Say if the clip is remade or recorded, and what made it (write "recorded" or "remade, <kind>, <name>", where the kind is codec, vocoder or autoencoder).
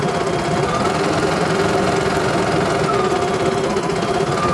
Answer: recorded